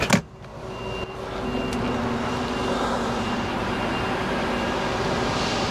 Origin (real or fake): real